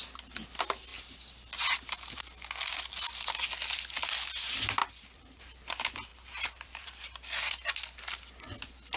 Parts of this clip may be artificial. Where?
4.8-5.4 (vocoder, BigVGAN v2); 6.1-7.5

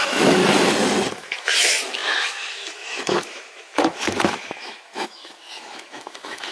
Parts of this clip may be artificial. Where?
0.0-0.4 (autoencoder, DAC-VAE); 1.1-6.5

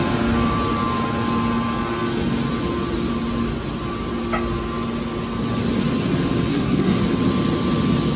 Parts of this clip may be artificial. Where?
6.5-7.0 (codec, SNAC)

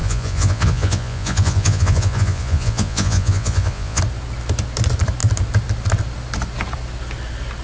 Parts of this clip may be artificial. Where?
0.0-4.0 (vocoder, Vocos)

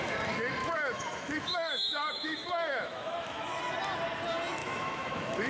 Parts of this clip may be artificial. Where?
0.6-3.6 (autoencoder, DAC-VAE); 4.6-5.5

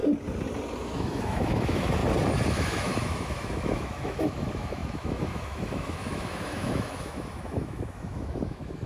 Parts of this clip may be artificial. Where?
0.8-2.0 (autoencoder, DAC-VAE); 2.5-8.9

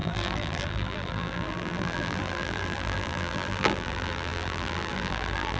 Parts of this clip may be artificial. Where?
0.0-5.6 (vocoder, BigVGAN v2)